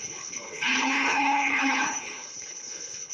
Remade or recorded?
remade